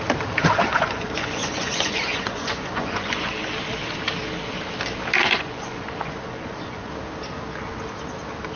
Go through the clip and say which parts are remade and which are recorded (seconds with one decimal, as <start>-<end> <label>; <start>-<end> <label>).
0.0-0.4 recorded; 0.4-3.3 remade; 3.3-5.2 recorded; 5.2-6.9 remade; 6.9-8.6 recorded